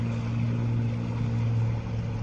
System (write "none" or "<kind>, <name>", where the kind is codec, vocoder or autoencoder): none